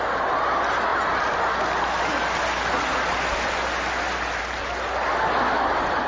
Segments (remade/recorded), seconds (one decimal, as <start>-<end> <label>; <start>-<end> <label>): 0.0-6.1 recorded